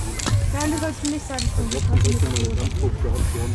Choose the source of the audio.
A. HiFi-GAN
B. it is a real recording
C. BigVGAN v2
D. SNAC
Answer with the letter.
B